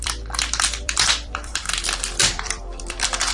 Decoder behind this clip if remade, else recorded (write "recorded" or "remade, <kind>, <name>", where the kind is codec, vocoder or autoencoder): remade, vocoder, BigVGAN v2